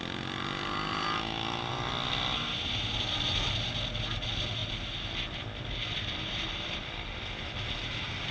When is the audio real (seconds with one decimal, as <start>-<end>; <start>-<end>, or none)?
0.0-8.3